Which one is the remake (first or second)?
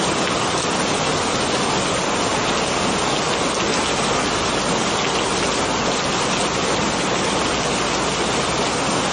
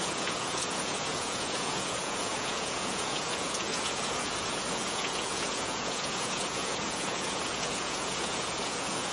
second